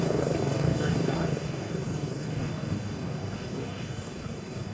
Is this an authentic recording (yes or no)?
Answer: no